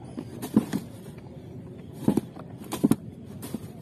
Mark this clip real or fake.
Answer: fake